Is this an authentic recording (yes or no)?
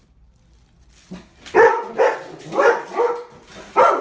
yes